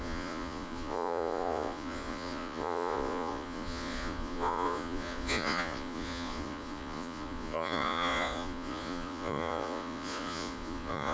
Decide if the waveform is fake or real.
fake